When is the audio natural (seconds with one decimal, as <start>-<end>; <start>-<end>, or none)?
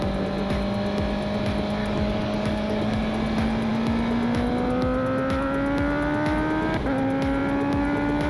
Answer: 0.0-1.8; 3.0-8.3